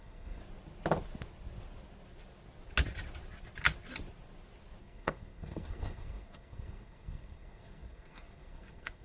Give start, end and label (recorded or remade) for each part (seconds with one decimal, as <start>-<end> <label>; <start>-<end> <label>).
0.0-0.4 remade; 0.4-4.8 recorded; 4.8-9.0 remade